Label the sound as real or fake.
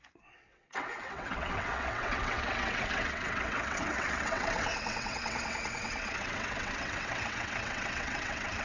fake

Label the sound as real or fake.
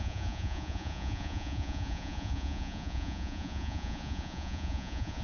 fake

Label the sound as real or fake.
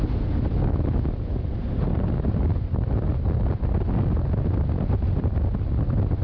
real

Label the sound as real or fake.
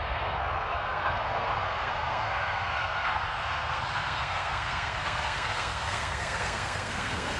fake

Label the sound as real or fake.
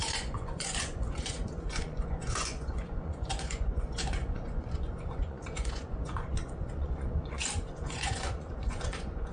fake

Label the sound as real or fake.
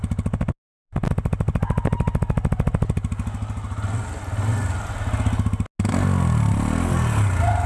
real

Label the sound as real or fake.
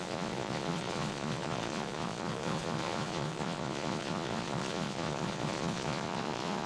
fake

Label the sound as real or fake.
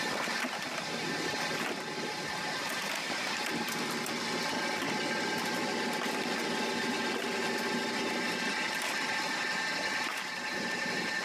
real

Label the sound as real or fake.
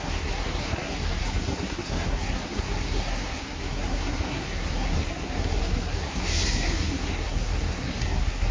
fake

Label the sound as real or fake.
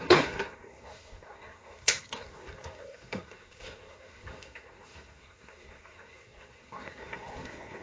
fake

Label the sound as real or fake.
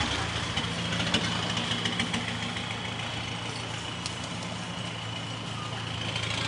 real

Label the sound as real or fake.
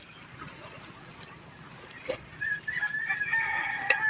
real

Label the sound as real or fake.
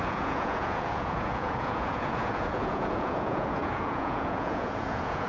fake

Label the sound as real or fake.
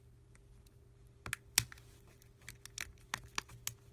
real